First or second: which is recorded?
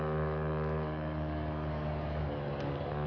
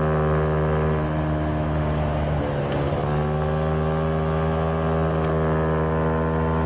second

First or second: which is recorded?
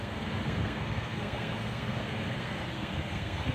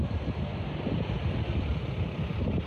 second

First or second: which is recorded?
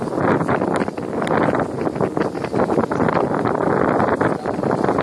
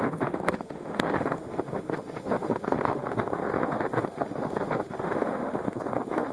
first